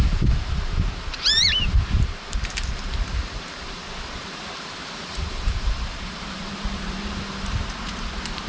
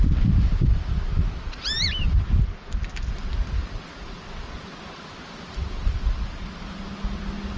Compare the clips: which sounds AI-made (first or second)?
first